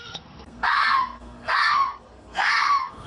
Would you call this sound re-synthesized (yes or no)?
yes